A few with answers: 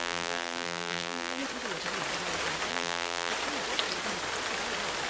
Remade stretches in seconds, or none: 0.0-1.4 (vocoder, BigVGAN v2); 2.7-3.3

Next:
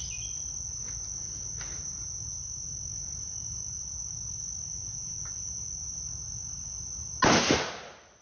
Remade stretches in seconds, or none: none

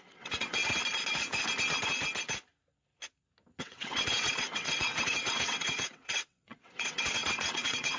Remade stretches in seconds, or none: 0.0-0.6 (vocoder, WaveNeXt); 3.6-8.0